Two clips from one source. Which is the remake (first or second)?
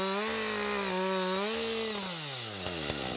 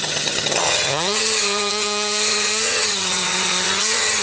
second